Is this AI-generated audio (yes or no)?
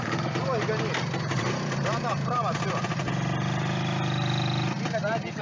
no